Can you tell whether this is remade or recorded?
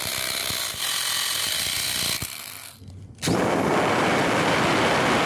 recorded